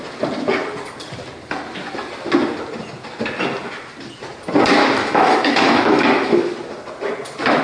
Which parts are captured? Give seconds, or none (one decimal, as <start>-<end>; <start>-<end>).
0.0-5.0; 6.5-7.6